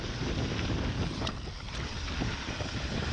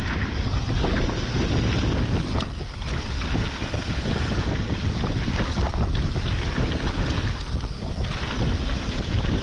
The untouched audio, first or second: second